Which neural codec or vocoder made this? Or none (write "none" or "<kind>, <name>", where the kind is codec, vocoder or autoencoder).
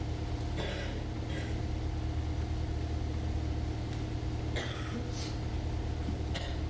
none